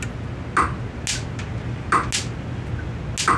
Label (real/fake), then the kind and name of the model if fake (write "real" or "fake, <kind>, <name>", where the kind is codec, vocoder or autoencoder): real